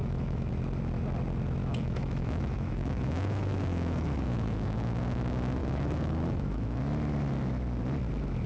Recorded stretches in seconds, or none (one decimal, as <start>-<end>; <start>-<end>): 0.5-1.6; 5.0-5.6; 6.8-8.5